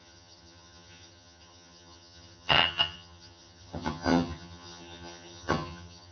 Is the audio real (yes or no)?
no